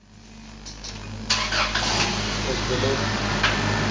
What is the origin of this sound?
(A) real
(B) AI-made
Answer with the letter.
A